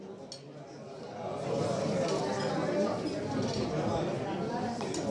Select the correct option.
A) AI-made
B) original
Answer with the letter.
B